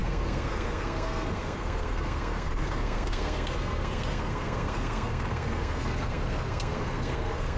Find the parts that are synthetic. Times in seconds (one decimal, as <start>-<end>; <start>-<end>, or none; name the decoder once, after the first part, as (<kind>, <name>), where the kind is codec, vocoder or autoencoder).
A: 0.0-7.6 (codec, SNAC)